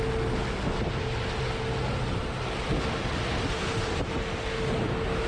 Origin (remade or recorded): recorded